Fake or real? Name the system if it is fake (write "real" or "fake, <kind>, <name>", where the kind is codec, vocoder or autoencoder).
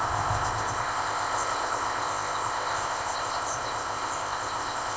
fake, codec, ZipCodec